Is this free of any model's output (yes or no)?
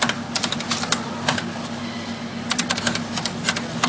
yes